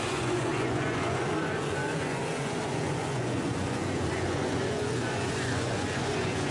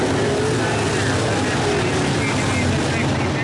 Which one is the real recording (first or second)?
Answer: second